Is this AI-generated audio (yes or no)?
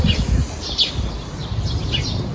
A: no